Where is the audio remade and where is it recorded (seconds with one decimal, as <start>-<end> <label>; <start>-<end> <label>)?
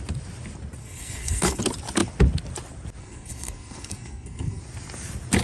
0.0-0.8 recorded; 0.8-1.6 remade; 1.6-3.0 recorded; 3.0-4.6 remade; 4.6-5.4 recorded